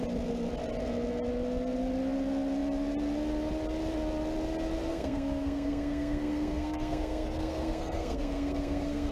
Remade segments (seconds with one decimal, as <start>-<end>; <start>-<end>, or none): 4.9-9.1